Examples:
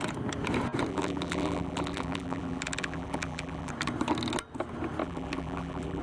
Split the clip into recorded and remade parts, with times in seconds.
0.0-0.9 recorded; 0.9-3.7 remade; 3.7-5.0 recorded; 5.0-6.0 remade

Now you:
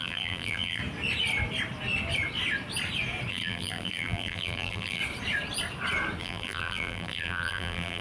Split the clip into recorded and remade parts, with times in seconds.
0.0-0.8 remade; 0.8-3.3 recorded; 3.3-5.0 remade; 5.0-6.2 recorded; 6.2-8.0 remade

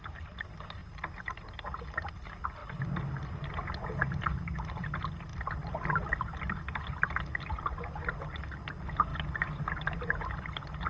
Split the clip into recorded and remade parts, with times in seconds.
0.0-0.8 recorded; 0.8-1.5 remade; 1.5-5.3 recorded; 5.3-6.4 remade; 6.4-9.1 recorded; 9.1-9.7 remade; 9.7-10.9 recorded